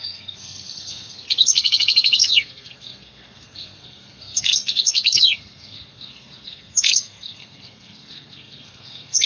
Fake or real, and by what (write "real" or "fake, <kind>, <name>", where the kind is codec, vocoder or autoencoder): fake, codec, SNAC